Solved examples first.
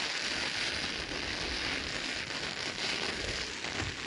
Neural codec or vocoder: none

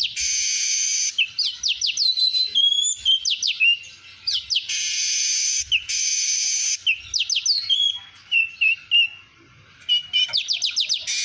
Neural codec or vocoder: none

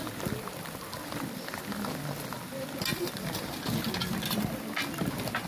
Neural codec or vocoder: none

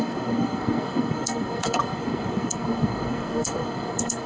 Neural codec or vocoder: codec, SNAC